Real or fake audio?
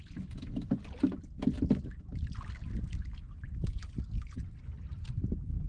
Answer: real